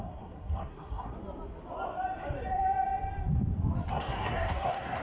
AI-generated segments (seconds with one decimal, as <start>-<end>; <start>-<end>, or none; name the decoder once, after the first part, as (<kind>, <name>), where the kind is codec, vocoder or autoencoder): 0.0-1.1 (codec, SNAC); 3.9-5.0

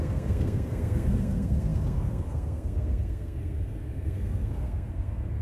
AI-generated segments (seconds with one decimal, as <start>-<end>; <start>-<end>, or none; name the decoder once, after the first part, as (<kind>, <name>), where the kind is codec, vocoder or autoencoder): 0.0-5.4 (codec, SNAC)